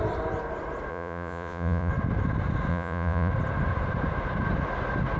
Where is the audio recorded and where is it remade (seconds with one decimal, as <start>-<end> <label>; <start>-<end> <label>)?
0.0-0.9 recorded; 0.9-1.9 remade; 1.9-2.7 recorded; 2.7-3.3 remade; 3.3-5.2 recorded